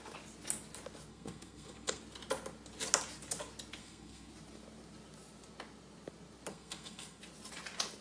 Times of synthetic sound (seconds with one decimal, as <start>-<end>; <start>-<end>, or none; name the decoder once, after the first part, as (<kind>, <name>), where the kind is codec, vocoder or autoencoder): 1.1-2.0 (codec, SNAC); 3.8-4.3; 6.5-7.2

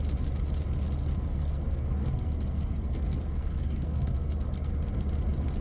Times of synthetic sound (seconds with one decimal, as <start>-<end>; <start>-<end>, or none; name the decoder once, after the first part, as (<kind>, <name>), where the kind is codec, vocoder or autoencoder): 1.3-4.7 (codec, SNAC)

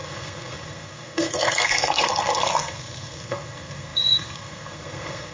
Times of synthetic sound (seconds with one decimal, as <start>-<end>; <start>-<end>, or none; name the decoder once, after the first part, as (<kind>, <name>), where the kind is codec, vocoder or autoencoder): 0.0-5.3 (codec, SNAC)